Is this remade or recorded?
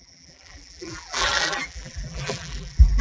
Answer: remade